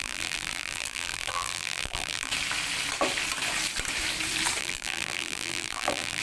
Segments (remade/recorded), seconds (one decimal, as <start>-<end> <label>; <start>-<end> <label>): 0.0-2.3 remade; 2.3-4.6 recorded; 4.6-6.2 remade